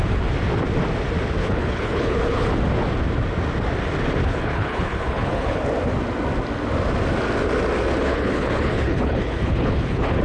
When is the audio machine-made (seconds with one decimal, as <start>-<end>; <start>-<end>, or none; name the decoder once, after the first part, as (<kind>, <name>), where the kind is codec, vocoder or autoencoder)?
1.4-2.5 (codec, HILCodec); 4.2-5.6; 8.0-10.2